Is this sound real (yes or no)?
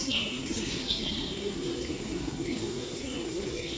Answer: no